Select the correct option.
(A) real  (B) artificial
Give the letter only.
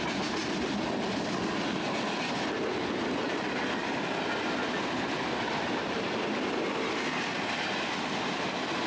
A